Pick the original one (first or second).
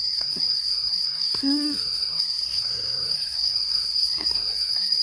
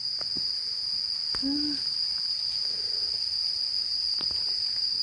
second